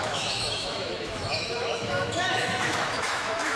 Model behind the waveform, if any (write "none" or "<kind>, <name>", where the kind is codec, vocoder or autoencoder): autoencoder, DAC-VAE